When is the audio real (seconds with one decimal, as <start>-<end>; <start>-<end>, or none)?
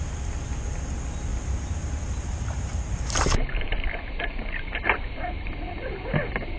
0.0-1.3; 5.3-6.6